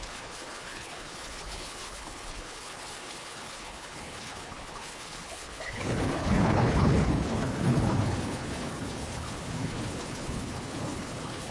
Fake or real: fake